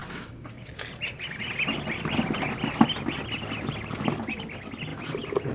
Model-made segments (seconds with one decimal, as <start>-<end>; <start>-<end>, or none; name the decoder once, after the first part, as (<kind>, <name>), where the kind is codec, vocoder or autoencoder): 0.0-0.8 (codec, DAC)